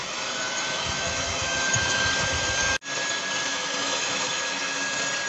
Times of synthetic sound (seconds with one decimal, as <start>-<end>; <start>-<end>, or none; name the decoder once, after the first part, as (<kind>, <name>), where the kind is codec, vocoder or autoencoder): 0.0-2.0 (autoencoder, DAC-VAE); 3.5-4.8